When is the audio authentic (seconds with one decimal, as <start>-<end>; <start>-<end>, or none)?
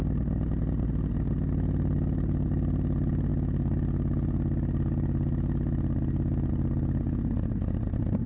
0.0-8.3